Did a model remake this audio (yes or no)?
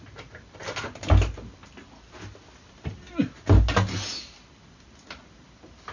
no